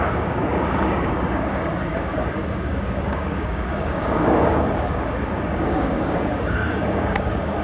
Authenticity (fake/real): fake